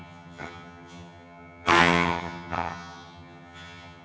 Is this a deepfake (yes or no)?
yes